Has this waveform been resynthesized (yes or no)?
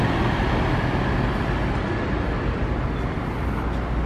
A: no